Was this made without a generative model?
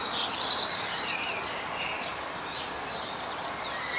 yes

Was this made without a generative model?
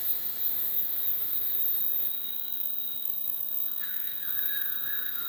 no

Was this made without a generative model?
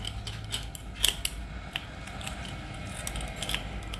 yes